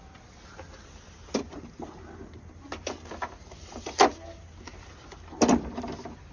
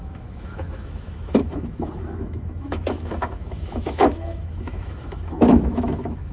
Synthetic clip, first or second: second